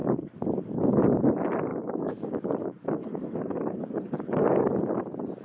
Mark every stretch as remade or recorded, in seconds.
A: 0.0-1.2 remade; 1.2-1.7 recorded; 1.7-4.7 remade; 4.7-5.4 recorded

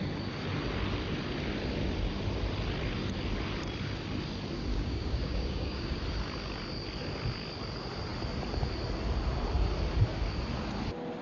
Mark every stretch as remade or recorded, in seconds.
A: 0.0-4.7 recorded; 4.7-6.0 remade; 6.0-11.2 recorded